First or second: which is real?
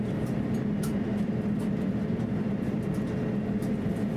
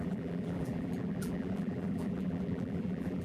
first